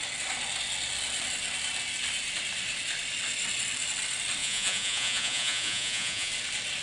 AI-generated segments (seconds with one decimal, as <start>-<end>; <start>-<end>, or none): 4.4-6.3